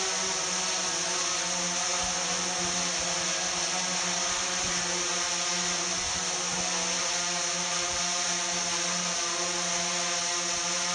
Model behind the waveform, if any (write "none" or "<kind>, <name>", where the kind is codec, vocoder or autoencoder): none